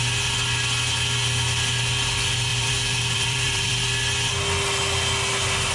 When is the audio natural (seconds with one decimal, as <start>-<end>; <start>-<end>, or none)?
0.0-2.5; 3.7-5.7